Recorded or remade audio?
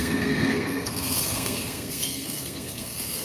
remade